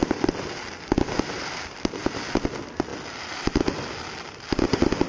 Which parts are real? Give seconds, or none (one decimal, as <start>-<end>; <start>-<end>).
2.0-5.1